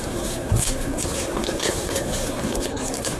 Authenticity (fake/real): fake